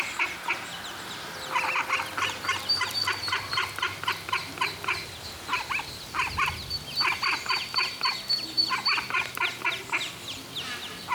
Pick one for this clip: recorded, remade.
recorded